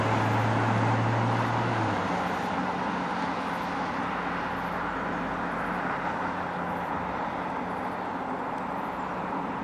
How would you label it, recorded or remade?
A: recorded